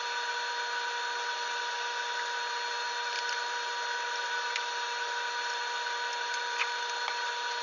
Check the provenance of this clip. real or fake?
real